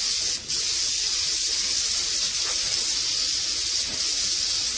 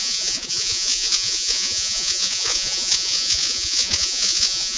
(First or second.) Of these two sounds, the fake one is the second